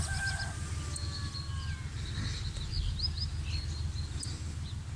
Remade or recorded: recorded